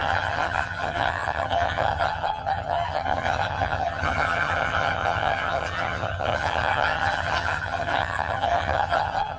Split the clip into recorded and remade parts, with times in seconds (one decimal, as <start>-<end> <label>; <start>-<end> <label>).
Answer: 0.0-9.4 remade